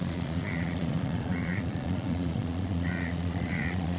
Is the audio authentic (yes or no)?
no